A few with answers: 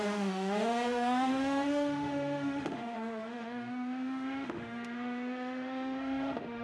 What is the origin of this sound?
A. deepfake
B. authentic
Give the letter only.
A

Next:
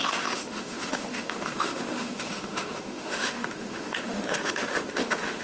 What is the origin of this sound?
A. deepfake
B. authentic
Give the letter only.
A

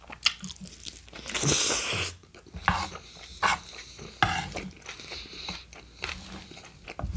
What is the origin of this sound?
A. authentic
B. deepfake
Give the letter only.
A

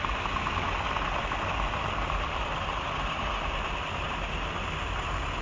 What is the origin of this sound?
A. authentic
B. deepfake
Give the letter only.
A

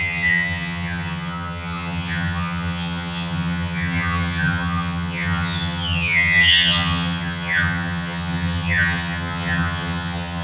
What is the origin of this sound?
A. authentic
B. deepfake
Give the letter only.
B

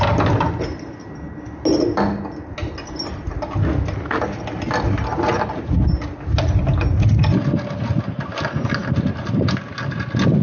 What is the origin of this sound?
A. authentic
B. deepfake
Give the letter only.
A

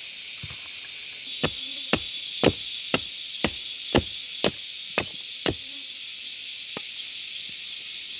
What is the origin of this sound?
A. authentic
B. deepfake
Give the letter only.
A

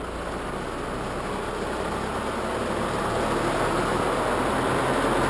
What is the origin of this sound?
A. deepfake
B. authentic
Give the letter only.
B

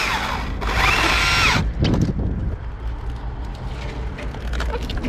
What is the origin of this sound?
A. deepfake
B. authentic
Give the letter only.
B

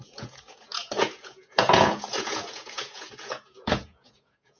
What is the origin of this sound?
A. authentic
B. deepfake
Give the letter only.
B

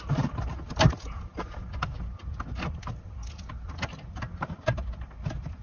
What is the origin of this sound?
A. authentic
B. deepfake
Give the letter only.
A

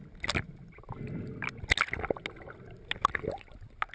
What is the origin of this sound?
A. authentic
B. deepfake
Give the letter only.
A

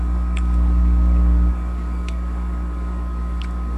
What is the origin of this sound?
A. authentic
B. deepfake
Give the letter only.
B